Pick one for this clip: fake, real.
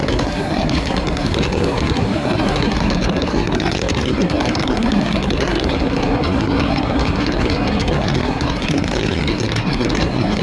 fake